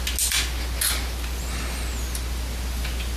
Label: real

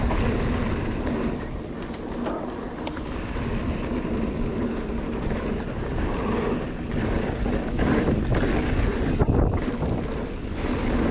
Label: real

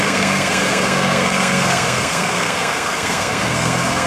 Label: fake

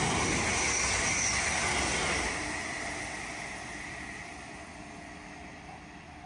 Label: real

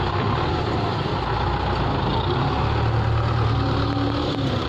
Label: real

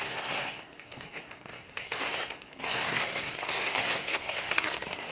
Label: fake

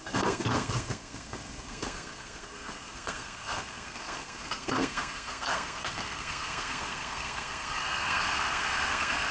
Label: fake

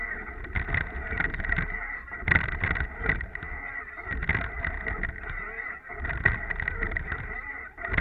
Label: real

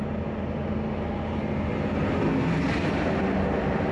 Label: real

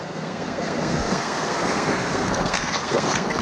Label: fake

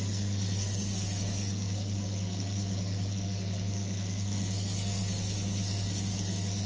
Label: fake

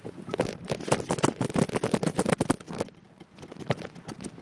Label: real